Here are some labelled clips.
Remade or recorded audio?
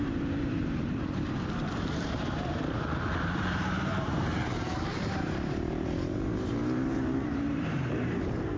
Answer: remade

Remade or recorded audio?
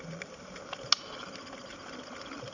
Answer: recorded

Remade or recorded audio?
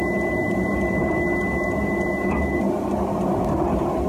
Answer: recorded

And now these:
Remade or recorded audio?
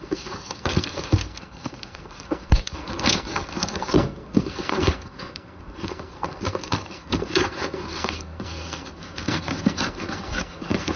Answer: remade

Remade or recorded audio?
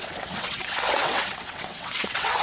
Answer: remade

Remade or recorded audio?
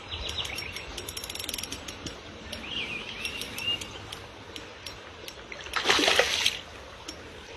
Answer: recorded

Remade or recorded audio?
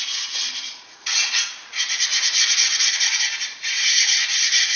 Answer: remade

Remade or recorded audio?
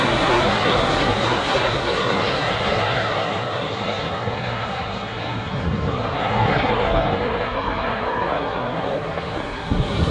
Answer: remade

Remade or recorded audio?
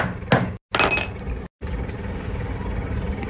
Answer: recorded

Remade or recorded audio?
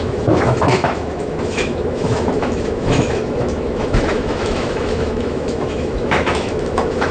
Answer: remade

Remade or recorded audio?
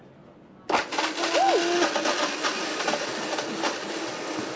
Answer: recorded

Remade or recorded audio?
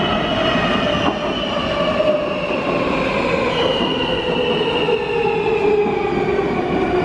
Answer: recorded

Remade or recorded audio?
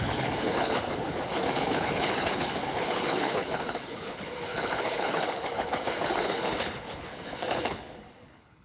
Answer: remade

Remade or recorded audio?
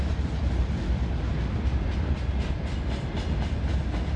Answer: recorded